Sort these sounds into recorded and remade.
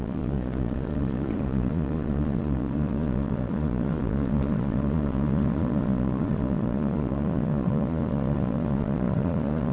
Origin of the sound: remade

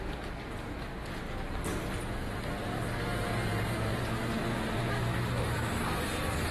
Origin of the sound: recorded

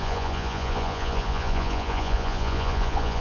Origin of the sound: remade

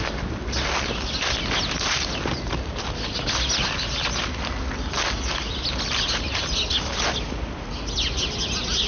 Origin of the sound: recorded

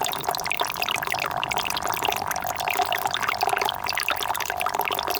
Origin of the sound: recorded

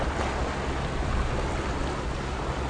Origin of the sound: recorded